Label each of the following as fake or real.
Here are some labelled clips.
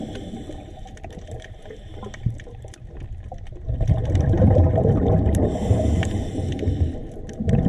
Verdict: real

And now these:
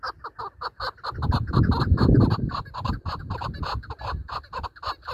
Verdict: real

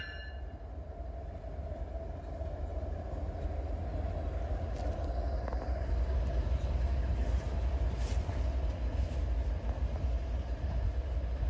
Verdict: real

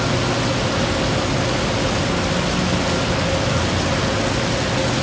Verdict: real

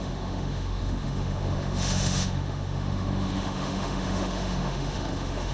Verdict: fake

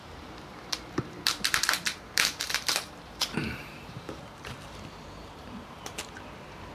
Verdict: fake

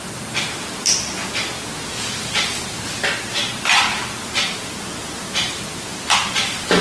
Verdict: real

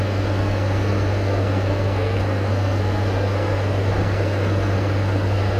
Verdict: fake